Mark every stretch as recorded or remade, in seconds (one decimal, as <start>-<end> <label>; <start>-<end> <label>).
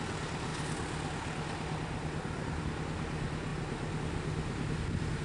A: 0.0-5.2 recorded